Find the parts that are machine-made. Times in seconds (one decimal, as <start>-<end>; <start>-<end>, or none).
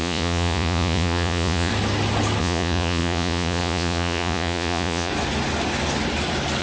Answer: 0.0-1.7; 2.4-5.1